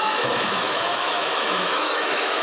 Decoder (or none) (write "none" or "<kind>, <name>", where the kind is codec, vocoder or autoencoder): autoencoder, DAC-VAE